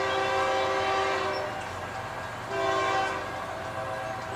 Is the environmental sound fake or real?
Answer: real